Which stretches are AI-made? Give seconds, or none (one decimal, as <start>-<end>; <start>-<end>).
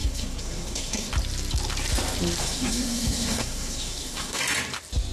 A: 0.0-1.1; 2.4-4.4